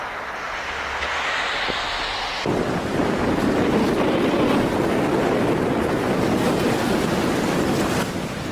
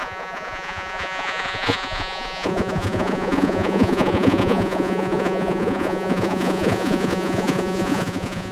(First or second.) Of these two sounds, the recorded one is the first